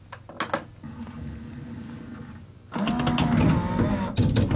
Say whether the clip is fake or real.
real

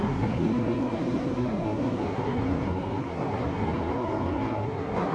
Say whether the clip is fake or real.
fake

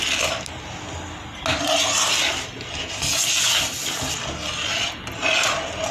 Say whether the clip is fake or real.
real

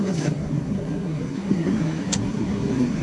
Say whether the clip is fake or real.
fake